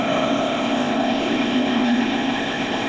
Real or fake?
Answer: fake